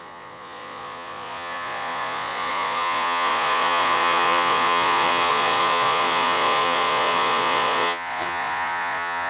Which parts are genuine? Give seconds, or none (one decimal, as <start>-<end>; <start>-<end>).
none